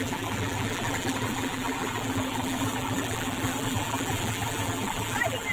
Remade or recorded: remade